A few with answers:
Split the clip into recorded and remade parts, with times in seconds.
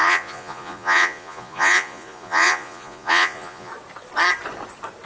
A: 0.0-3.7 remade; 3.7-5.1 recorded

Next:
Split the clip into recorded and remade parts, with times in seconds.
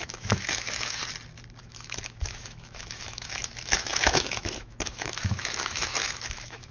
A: 0.0-1.0 remade; 1.0-1.6 recorded; 1.6-6.7 remade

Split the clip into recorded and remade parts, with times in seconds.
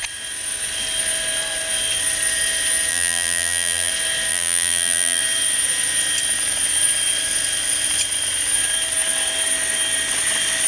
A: 0.0-2.9 recorded; 2.9-3.9 remade; 3.9-4.3 recorded; 4.3-5.2 remade; 5.2-10.7 recorded